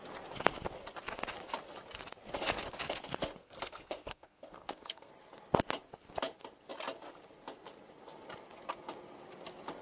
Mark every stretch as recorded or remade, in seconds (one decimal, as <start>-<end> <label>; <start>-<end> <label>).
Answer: 0.0-3.4 recorded; 3.4-5.1 remade; 5.1-9.8 recorded